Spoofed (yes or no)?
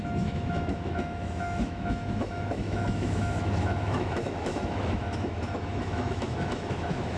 yes